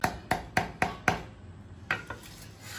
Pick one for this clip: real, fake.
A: real